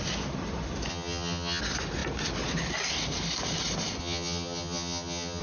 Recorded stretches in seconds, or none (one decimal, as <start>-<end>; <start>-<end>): 0.0-0.9; 1.6-4.0